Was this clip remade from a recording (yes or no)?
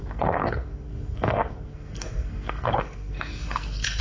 yes